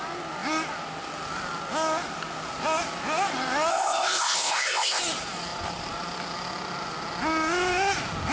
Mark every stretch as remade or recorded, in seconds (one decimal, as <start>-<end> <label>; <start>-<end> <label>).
0.0-3.7 recorded; 3.7-5.0 remade; 5.0-8.3 recorded